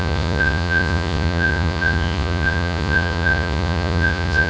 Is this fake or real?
fake